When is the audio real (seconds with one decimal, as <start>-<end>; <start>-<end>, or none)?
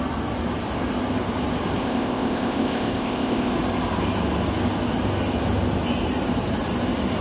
0.0-1.8; 3.5-7.2